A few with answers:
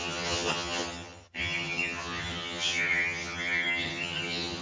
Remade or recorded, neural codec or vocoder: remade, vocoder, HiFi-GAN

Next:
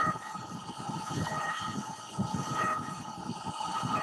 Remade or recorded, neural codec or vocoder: remade, codec, HILCodec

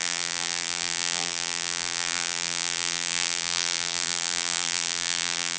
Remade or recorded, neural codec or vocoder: remade, vocoder, BigVGAN v2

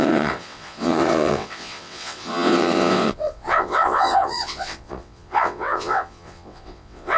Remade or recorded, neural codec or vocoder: remade, vocoder, WaveNeXt